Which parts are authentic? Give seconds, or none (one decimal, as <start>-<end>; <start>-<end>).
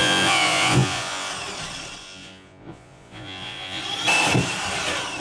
1.3-2.0; 3.8-5.2